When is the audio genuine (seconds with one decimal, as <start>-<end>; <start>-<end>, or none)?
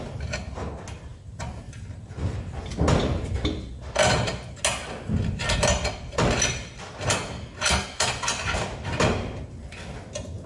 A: 0.0-10.5